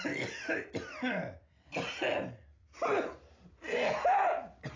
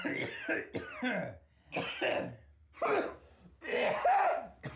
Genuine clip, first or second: second